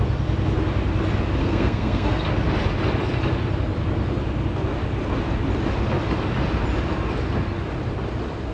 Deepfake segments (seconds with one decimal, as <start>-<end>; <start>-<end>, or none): 1.4-2.2